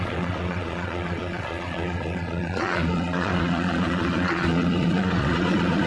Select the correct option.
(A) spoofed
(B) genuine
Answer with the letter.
A